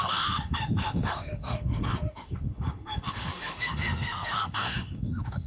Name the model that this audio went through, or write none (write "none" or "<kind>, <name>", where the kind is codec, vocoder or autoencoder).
autoencoder, DAC-VAE